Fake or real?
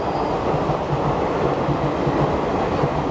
real